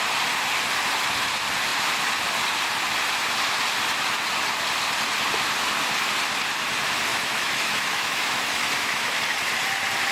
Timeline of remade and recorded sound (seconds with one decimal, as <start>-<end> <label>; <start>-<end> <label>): 0.0-7.1 recorded; 7.1-9.2 remade; 9.2-10.1 recorded